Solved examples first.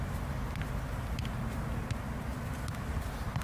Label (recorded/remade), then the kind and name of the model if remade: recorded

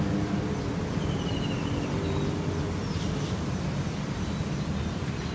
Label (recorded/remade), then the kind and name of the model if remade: recorded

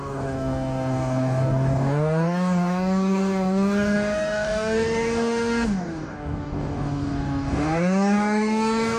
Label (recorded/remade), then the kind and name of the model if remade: remade, codec, DAC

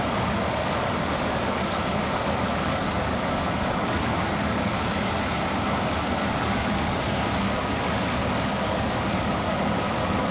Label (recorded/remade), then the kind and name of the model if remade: remade, codec, DAC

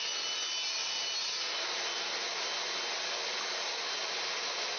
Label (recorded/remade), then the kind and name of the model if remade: recorded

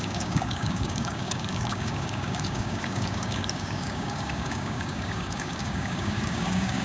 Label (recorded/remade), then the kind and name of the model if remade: remade, codec, DAC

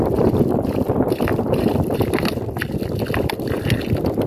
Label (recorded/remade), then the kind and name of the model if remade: recorded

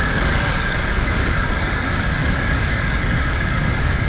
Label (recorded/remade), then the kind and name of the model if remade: remade, codec, DAC